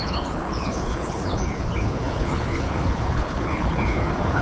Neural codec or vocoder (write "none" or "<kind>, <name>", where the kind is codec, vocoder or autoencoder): codec, HILCodec